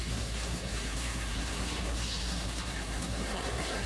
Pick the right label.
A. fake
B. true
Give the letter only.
A